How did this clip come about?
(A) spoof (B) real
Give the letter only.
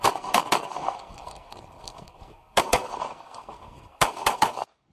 A